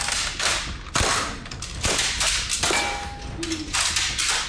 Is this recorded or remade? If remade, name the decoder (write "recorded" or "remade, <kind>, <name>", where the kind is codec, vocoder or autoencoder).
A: recorded